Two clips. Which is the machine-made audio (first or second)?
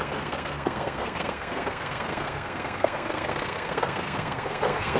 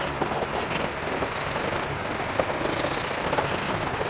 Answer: first